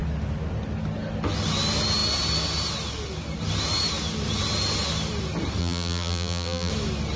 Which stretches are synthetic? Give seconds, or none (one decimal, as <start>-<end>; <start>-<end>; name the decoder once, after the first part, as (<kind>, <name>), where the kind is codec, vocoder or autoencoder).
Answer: 5.6-6.7 (vocoder, BigVGAN v2)